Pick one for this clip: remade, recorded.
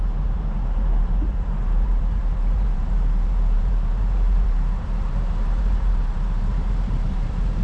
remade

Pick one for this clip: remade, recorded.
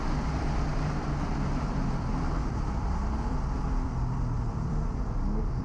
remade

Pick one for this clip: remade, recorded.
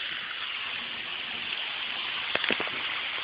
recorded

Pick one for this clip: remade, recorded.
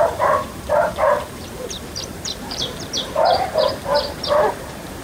remade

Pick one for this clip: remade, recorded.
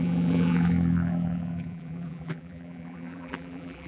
remade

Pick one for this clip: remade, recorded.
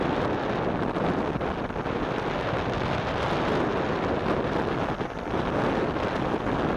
recorded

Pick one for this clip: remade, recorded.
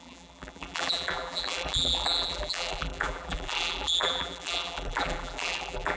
remade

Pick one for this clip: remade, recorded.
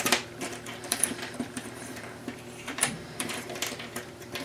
remade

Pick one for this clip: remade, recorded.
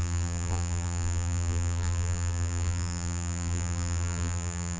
remade